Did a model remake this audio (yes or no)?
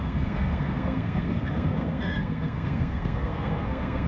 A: yes